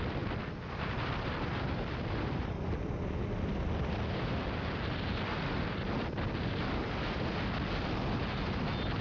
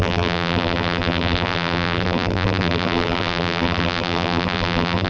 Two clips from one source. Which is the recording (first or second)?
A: first